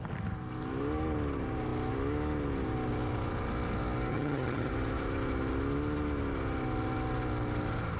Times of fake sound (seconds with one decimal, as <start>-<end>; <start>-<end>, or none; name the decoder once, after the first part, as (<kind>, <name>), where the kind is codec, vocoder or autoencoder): 4.1-4.7 (vocoder, HiFi-GAN)